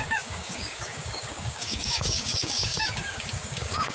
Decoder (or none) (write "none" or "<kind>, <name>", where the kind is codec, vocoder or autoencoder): codec, DAC